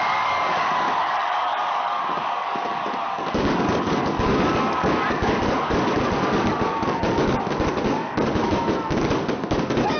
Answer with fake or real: fake